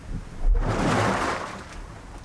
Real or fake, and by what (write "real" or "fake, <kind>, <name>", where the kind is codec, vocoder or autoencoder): real